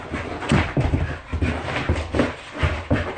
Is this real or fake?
fake